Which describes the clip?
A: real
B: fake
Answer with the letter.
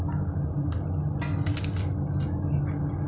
A